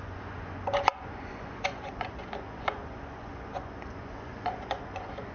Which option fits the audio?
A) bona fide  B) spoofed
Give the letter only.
B